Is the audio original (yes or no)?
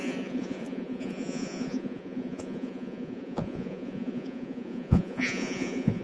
no